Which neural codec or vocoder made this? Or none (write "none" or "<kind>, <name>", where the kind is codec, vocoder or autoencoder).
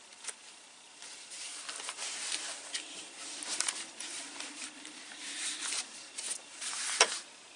vocoder, BigVGAN v2